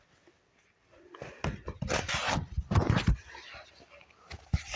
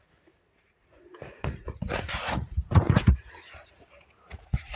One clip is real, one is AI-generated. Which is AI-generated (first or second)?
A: second